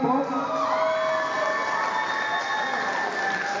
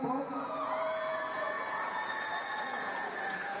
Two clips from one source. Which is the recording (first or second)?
first